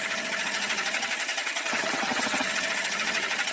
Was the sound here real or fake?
fake